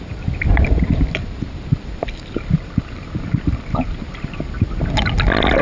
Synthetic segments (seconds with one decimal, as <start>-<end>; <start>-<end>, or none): 1.2-4.0